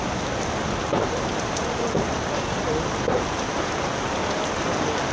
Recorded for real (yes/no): no